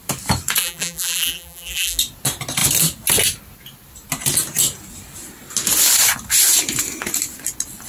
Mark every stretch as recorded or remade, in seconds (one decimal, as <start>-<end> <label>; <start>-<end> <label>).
0.0-0.6 recorded; 0.6-2.0 remade; 2.0-7.9 recorded